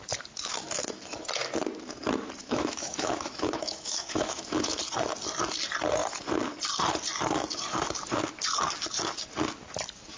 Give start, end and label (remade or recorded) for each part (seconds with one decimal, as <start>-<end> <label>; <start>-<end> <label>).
0.0-2.4 recorded; 2.4-4.8 remade; 4.8-10.2 recorded